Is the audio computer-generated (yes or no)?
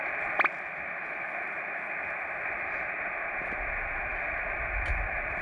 no